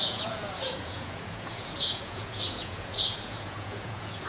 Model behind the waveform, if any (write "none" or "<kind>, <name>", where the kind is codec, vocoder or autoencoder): vocoder, Vocos